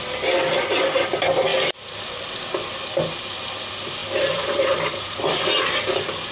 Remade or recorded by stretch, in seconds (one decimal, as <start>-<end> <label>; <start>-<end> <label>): 0.0-1.5 recorded; 1.5-2.3 remade; 2.3-4.0 recorded; 4.0-5.8 remade; 5.8-6.3 recorded